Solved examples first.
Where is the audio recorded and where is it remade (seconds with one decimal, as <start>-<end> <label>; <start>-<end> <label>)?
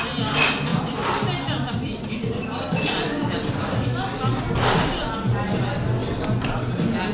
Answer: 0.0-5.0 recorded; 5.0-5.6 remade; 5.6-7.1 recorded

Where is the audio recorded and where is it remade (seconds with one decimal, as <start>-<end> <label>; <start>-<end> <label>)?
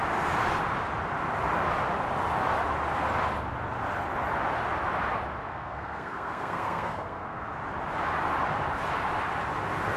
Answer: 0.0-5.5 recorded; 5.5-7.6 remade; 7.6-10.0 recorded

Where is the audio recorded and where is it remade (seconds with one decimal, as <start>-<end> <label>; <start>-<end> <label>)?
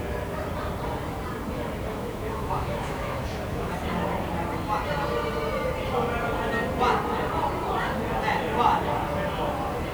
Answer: 0.0-1.9 recorded; 1.9-3.7 remade; 3.7-9.9 recorded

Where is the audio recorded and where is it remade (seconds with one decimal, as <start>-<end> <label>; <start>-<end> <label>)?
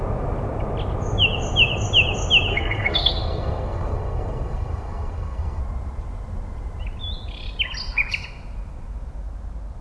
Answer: 0.0-2.5 recorded; 2.5-5.6 remade; 5.6-9.8 recorded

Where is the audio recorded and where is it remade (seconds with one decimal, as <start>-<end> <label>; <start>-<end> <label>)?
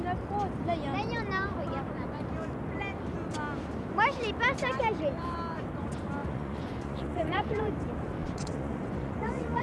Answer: 0.0-6.2 recorded; 6.2-7.7 remade; 7.7-8.2 recorded; 8.2-9.6 remade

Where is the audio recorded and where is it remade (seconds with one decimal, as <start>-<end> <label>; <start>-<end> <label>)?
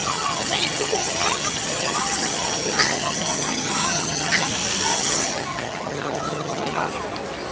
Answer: 0.0-4.5 remade; 4.5-4.9 recorded; 4.9-6.9 remade; 6.9-7.5 recorded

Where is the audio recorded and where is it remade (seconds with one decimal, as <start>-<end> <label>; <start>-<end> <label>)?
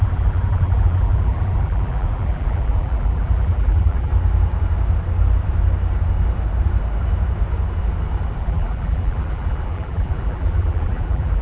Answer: 0.0-4.1 remade; 4.1-8.4 recorded; 8.4-11.4 remade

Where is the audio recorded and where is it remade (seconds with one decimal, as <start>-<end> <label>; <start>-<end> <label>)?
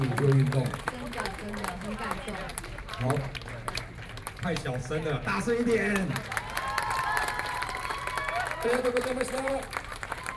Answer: 0.0-4.8 remade; 4.8-7.0 recorded; 7.0-7.9 remade; 7.9-8.7 recorded; 8.7-10.4 remade